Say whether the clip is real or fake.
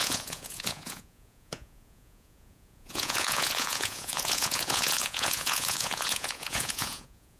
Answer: fake